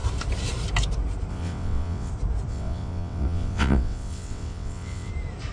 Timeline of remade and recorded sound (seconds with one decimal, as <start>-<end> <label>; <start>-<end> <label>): 0.0-1.3 recorded; 1.3-2.1 remade; 2.1-2.5 recorded; 2.5-5.1 remade; 5.1-5.5 recorded